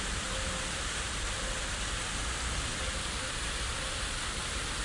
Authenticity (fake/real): real